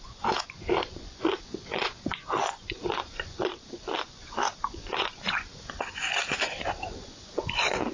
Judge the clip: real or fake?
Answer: fake